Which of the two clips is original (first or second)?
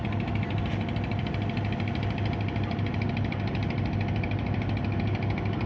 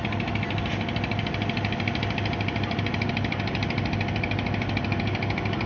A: second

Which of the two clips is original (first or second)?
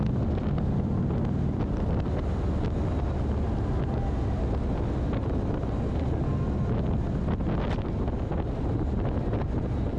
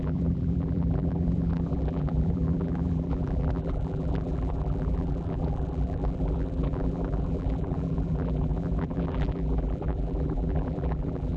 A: first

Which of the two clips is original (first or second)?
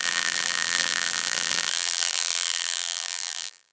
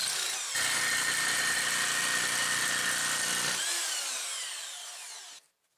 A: second